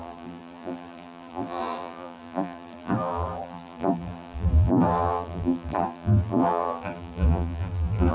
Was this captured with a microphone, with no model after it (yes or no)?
no